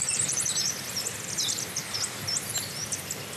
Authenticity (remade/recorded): remade